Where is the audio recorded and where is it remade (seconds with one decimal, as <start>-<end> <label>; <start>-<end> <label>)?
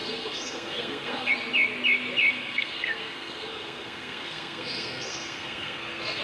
0.0-1.3 remade; 1.3-2.3 recorded; 2.3-6.2 remade